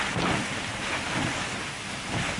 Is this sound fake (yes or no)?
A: no